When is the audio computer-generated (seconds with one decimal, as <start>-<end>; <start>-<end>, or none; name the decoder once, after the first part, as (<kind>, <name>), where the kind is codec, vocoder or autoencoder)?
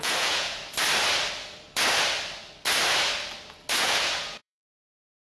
0.0-0.6 (vocoder, Vocos); 3.8-5.3